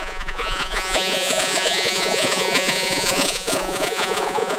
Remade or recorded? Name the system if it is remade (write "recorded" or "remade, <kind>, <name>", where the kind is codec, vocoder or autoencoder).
remade, vocoder, Vocos